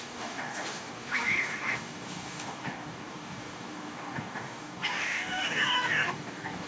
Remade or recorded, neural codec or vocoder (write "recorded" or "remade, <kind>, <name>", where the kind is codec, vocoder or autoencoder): remade, codec, DAC